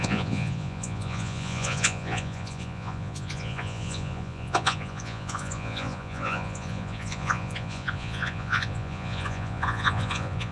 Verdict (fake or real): fake